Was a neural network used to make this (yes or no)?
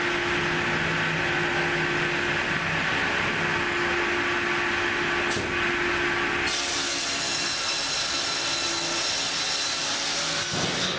no